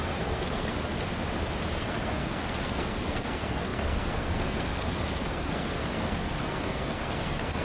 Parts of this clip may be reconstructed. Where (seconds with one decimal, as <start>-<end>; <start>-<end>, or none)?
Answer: 0.0-0.9; 1.7-7.6